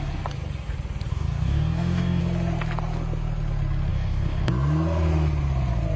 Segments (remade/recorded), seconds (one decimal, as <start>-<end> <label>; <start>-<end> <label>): 0.0-1.1 recorded; 1.1-2.2 remade; 2.2-3.9 recorded; 3.9-4.5 remade; 4.5-6.0 recorded